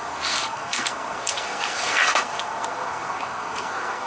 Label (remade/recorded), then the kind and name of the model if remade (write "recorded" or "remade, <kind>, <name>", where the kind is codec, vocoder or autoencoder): remade, codec, SNAC